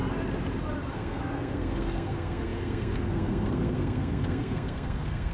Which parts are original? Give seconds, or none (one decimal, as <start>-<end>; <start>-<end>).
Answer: 0.0-0.9